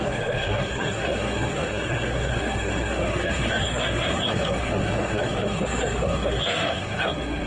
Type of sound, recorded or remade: remade